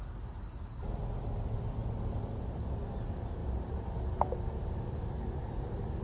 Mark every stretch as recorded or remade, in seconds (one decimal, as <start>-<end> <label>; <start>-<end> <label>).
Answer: 0.0-3.4 recorded; 3.4-5.4 remade; 5.4-6.0 recorded